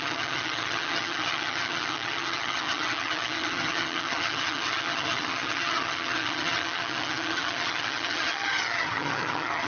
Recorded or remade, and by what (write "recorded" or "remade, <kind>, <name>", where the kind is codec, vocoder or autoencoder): remade, vocoder, HiFi-GAN